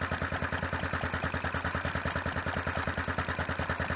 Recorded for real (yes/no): yes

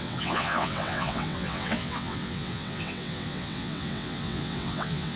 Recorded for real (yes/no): no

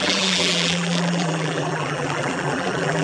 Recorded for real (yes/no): no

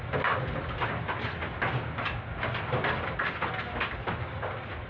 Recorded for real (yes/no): yes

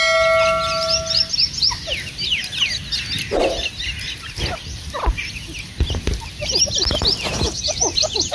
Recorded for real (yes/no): yes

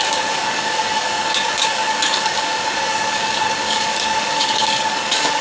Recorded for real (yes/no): no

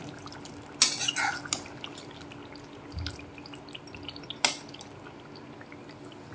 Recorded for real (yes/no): yes